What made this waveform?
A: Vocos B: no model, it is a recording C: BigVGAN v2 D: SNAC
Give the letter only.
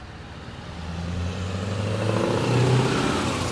B